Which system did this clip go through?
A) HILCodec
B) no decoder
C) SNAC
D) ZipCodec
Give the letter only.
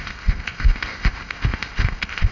D